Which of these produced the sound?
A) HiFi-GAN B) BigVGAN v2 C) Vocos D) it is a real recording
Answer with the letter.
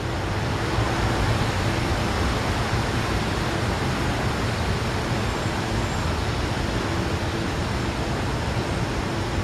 D